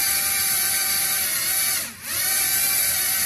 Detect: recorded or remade recorded